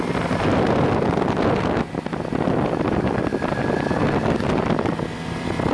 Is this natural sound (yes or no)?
yes